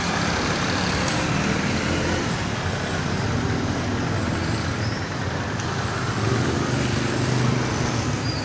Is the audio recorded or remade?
recorded